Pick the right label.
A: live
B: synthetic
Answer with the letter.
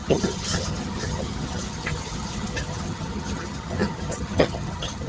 B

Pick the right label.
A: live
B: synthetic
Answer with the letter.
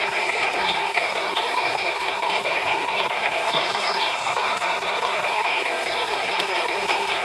B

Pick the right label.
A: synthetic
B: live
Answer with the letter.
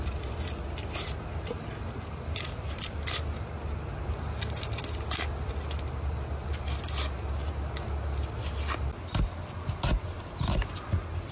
B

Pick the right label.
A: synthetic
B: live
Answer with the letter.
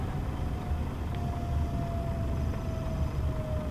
B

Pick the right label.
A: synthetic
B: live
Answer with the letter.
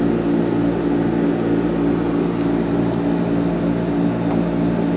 B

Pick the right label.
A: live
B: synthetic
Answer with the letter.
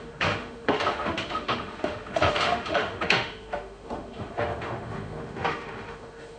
B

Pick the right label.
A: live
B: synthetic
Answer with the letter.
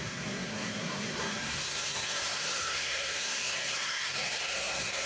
B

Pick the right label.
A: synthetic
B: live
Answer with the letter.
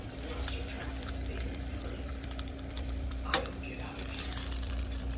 A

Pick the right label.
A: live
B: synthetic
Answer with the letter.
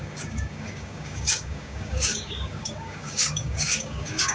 B